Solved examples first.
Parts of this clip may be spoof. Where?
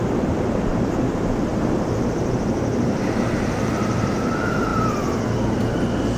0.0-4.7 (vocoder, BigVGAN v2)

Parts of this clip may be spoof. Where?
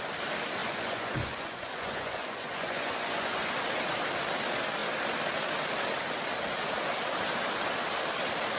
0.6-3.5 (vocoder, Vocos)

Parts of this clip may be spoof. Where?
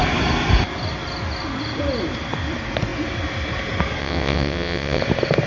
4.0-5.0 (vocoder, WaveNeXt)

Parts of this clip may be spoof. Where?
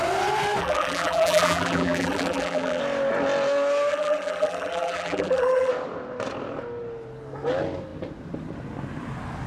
0.6-2.8 (vocoder, BigVGAN v2); 3.9-5.7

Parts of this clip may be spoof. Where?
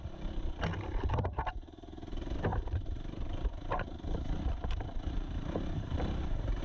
2.5-6.6 (vocoder, BigVGAN v2)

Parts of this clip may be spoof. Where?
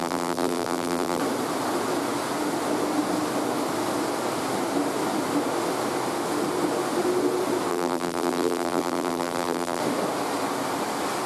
0.0-1.2 (vocoder, BigVGAN v2); 7.7-9.8